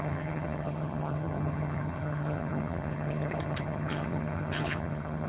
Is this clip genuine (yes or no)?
no